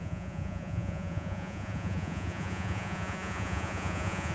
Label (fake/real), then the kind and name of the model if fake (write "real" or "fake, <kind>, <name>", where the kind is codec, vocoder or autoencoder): fake, vocoder, Vocos